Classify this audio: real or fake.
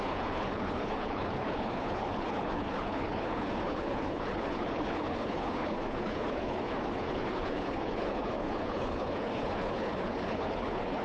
fake